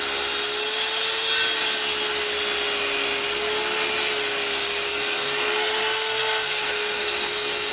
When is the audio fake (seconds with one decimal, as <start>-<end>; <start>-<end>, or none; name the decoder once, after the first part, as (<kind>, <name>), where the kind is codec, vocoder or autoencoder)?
4.9-7.7 (codec, SNAC)